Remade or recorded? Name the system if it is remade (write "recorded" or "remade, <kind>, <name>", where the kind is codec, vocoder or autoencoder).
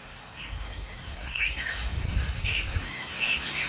remade, codec, SNAC